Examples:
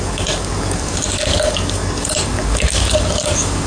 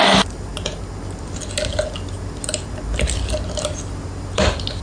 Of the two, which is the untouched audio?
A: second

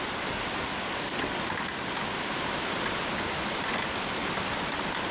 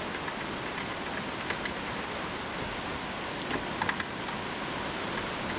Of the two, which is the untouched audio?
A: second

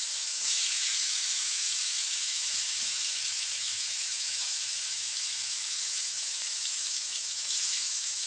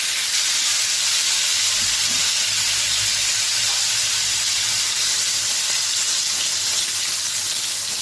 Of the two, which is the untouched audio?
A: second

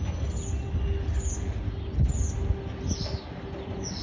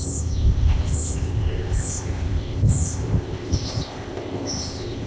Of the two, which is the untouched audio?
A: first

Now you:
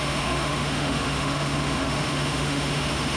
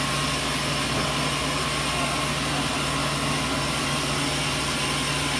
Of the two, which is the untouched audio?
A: second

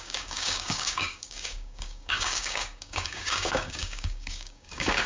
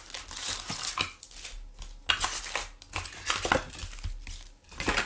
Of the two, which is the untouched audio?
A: second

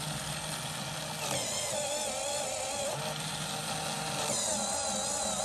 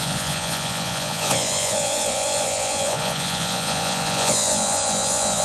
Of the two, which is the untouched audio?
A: first